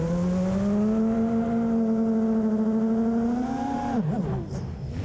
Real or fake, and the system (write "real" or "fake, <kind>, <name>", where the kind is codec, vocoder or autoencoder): real